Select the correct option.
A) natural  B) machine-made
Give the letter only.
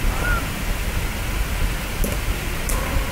A